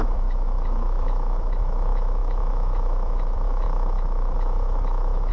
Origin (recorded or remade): remade